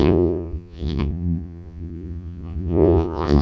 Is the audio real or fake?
fake